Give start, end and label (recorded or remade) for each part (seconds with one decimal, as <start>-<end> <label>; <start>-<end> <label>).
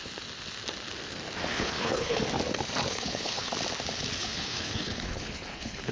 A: 0.0-1.5 recorded; 1.5-2.2 remade; 2.2-2.9 recorded; 2.9-3.5 remade; 3.5-4.2 recorded; 4.2-5.9 remade